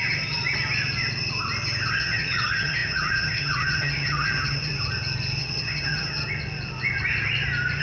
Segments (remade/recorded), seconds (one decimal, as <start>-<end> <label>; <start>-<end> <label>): 0.0-0.4 remade; 0.4-1.9 recorded; 1.9-4.7 remade; 4.7-5.4 recorded; 5.4-6.2 remade; 6.2-7.8 recorded